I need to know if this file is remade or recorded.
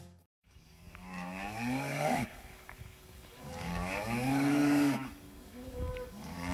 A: remade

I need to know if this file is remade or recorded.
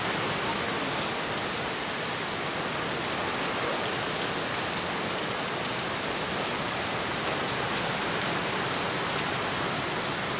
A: recorded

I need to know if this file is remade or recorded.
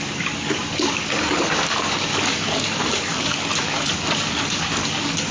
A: remade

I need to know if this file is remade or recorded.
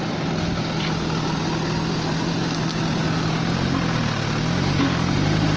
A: recorded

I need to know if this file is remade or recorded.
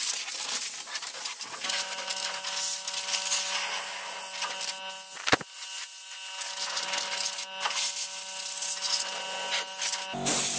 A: recorded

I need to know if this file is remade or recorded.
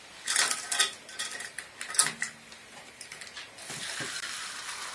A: recorded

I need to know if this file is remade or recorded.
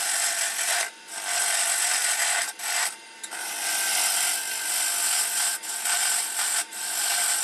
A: recorded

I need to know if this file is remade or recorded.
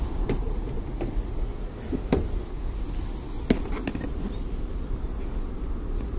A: recorded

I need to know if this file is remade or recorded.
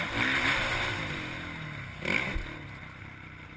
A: recorded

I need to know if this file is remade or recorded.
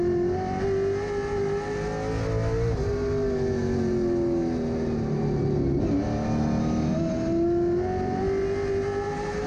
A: recorded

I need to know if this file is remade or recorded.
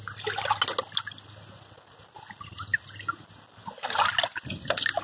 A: recorded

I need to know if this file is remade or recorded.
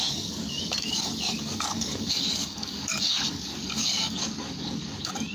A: remade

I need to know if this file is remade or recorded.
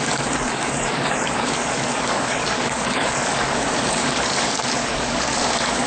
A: remade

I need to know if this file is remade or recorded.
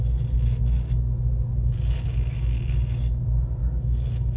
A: recorded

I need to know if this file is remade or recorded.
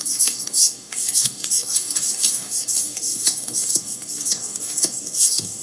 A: remade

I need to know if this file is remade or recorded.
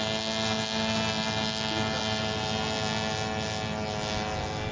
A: recorded